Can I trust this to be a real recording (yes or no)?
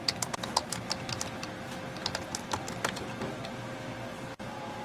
yes